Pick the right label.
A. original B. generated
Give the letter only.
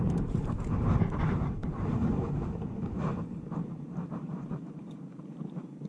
B